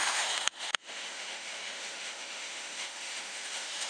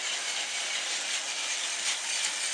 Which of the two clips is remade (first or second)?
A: first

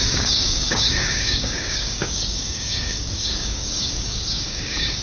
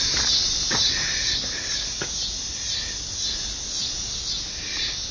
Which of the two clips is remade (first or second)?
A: first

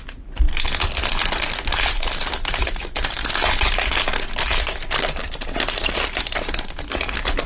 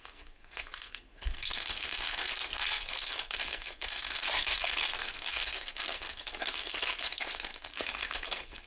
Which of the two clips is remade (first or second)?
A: second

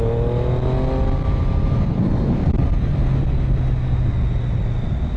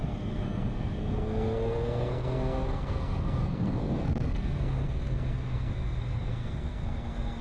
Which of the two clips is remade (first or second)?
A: second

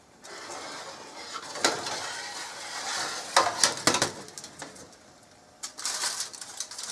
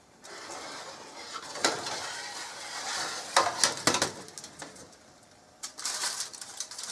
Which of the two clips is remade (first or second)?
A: second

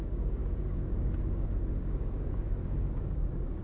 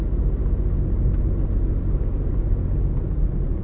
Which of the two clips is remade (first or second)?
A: first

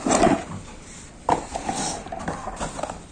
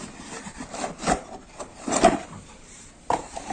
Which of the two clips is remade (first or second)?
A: second